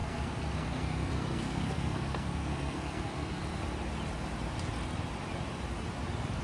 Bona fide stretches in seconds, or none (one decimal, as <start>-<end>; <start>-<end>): 3.4-6.4